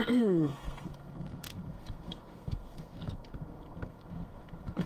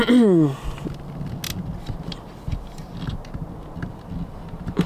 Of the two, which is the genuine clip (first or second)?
second